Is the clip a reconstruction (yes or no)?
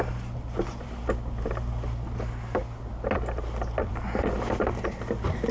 no